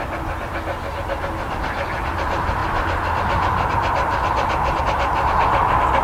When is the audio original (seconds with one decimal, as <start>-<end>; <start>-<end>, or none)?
0.0-2.6; 4.8-6.0

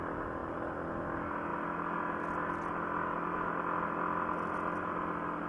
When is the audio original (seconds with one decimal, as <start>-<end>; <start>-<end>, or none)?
0.0-5.5

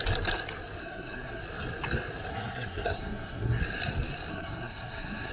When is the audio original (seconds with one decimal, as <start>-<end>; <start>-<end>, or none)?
0.0-0.8; 1.4-2.3; 3.6-4.3

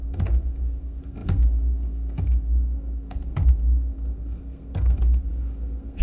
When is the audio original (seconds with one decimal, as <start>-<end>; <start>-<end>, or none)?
none

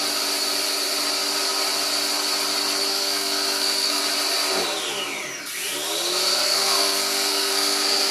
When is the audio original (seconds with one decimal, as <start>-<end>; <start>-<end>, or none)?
0.0-2.9; 4.0-6.3